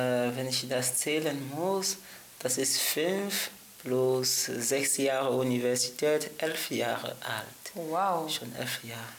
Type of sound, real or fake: real